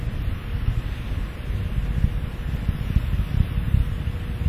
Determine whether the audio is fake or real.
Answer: real